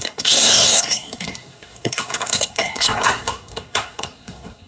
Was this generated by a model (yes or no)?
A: yes